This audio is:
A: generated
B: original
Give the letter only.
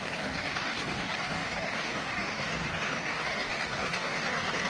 A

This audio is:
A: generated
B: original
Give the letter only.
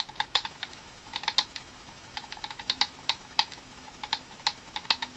A